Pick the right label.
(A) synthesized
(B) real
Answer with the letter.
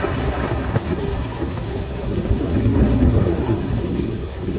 A